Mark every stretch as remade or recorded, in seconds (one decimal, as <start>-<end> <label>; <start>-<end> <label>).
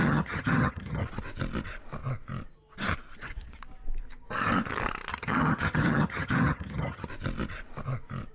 0.0-1.0 remade; 1.0-5.1 recorded; 5.1-7.1 remade; 7.1-8.3 recorded